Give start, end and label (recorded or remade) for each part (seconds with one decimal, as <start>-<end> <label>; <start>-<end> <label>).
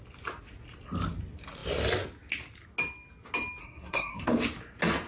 0.0-3.6 recorded; 3.6-4.3 remade; 4.3-5.1 recorded